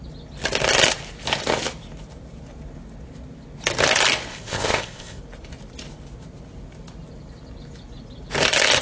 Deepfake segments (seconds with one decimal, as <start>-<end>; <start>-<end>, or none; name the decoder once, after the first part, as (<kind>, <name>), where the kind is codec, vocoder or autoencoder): 4.3-5.2 (codec, ZipCodec)